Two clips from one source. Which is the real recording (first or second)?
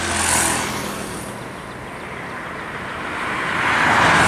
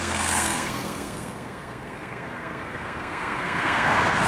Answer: first